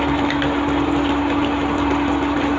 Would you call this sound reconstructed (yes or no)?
no